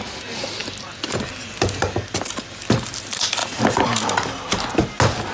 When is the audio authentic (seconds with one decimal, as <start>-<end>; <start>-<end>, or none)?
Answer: 0.0-0.6; 2.4-3.4; 4.7-5.3